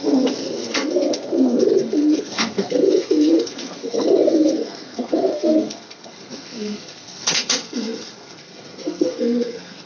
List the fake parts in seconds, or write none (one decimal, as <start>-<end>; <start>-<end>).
0.0-9.9